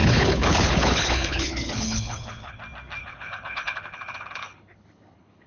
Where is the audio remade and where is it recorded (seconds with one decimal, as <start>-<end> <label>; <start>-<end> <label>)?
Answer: 0.0-2.6 remade; 2.6-3.0 recorded; 3.0-5.5 remade